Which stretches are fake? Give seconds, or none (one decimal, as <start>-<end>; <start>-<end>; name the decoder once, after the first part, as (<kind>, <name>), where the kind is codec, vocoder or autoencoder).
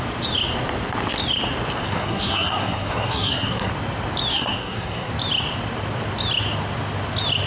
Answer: 1.8-3.7 (codec, SNAC); 4.3-5.1